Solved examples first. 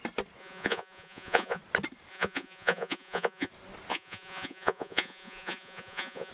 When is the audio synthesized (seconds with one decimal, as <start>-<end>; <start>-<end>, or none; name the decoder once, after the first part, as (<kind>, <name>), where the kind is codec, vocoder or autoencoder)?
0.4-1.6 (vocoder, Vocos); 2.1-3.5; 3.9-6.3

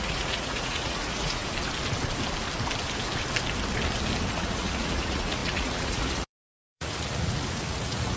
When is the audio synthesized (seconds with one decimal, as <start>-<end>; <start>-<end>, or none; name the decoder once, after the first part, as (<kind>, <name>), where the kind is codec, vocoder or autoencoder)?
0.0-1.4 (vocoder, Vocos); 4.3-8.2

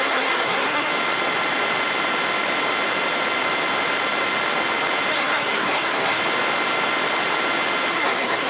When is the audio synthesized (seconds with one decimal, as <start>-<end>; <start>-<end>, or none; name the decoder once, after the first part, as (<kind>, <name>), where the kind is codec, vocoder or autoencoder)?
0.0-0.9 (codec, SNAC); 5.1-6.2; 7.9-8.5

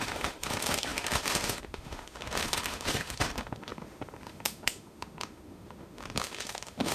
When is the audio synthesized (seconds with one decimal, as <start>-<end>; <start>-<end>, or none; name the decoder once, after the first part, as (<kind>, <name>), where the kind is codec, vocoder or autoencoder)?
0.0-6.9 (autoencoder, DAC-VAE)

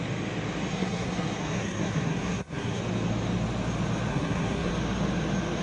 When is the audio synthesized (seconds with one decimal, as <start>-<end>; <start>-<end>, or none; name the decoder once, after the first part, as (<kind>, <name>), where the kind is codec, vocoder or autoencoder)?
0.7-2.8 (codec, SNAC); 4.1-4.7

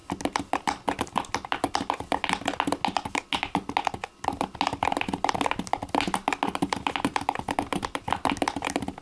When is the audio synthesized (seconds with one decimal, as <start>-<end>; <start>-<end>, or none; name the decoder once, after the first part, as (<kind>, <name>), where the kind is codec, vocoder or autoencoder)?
none